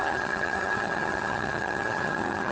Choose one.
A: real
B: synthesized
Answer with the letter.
B